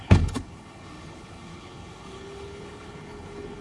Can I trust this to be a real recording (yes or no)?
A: no